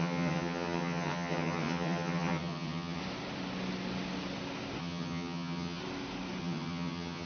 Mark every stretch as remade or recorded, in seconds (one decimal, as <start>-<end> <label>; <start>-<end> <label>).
0.0-3.0 remade; 3.0-4.8 recorded; 4.8-5.8 remade; 5.8-6.4 recorded; 6.4-7.3 remade